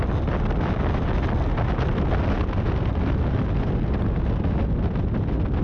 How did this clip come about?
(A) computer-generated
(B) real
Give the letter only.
B